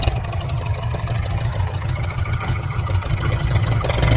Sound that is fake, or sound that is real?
fake